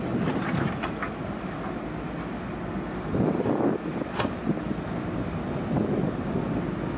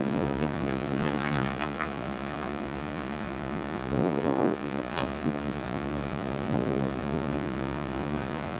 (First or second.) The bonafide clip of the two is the first